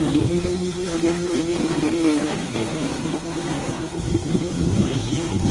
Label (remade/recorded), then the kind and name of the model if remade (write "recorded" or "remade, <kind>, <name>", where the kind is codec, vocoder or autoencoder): remade, codec, SNAC